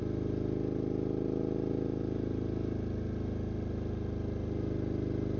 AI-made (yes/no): no